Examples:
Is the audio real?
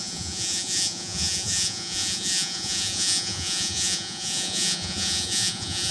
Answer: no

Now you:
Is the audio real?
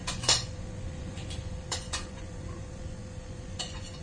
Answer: no